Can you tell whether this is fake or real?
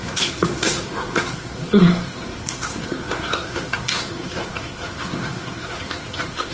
fake